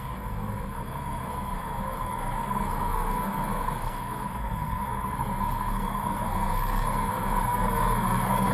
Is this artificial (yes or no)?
yes